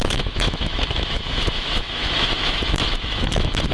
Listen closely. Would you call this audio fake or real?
fake